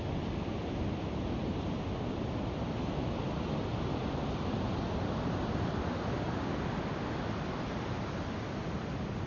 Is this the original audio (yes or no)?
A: yes